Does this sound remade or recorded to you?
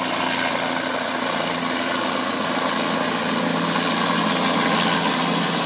recorded